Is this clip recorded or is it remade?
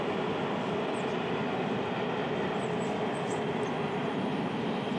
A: recorded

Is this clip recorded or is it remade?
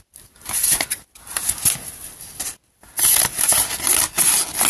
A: recorded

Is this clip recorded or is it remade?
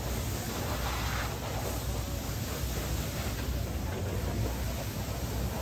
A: recorded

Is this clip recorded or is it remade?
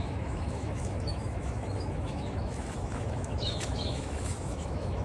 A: remade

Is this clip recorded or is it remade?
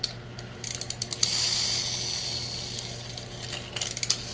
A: recorded